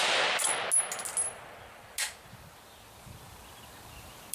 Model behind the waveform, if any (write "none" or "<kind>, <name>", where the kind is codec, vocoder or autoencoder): none